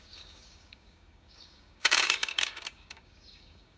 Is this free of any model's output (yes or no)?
no